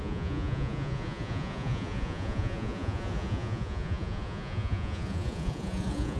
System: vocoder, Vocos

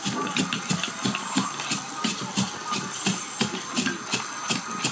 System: none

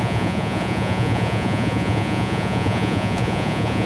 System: vocoder, Vocos